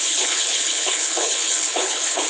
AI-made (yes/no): yes